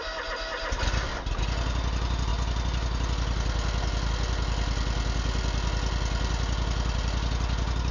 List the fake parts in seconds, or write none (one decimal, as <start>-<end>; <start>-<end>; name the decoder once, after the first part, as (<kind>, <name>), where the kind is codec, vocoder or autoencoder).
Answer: none